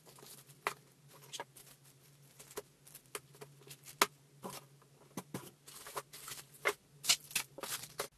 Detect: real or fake real